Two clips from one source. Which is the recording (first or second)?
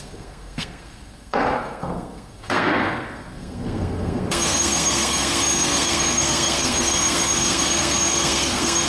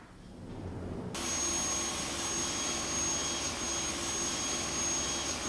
second